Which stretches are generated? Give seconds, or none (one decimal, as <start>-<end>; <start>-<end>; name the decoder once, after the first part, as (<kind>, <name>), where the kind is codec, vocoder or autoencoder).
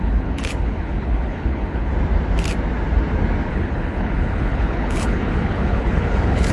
0.0-1.9 (codec, HILCodec); 3.5-6.5